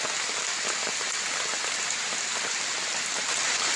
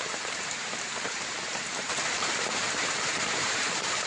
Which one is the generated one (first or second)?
second